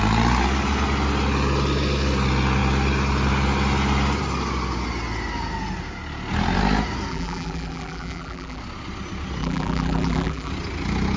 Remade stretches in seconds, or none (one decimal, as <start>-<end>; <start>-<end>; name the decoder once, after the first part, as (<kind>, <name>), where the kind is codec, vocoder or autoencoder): 7.1-8.6 (vocoder, BigVGAN v2); 9.4-10.5